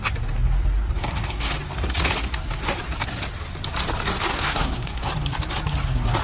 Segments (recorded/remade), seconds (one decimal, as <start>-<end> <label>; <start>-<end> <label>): 0.0-1.0 recorded; 1.0-1.5 remade; 1.5-4.3 recorded; 4.3-5.1 remade; 5.1-6.2 recorded